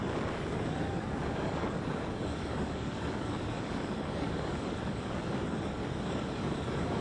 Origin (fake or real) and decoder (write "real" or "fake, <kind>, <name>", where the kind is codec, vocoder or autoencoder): fake, codec, DAC